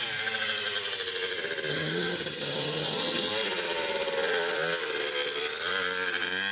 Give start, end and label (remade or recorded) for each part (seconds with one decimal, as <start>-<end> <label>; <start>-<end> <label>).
0.0-1.7 recorded; 1.7-3.3 remade; 3.3-6.5 recorded